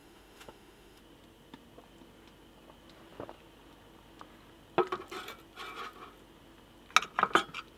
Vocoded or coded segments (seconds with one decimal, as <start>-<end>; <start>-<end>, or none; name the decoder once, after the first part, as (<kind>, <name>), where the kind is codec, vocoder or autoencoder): 0.0-1.0 (autoencoder, DAC-VAE)